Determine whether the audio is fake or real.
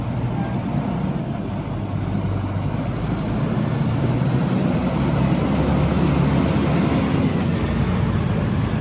real